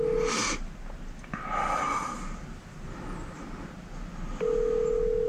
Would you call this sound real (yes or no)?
yes